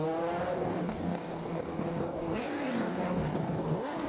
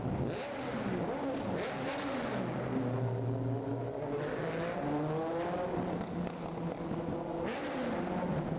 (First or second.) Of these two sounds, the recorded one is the second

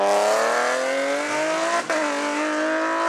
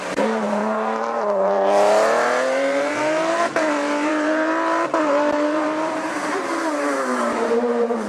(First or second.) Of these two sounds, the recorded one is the first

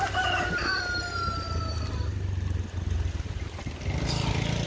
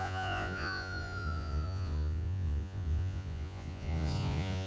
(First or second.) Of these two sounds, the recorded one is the first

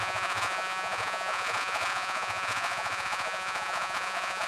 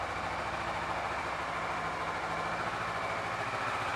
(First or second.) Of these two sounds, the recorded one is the second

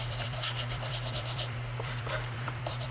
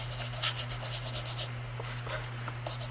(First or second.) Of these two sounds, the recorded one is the second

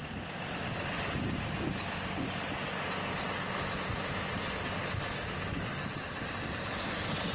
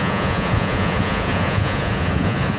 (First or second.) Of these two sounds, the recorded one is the first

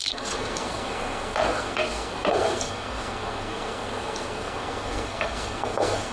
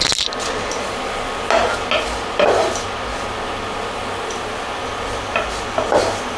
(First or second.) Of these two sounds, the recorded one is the second